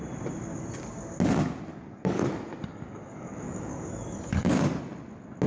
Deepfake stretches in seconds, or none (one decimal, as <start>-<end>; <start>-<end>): 1.7-2.3; 2.7-4.8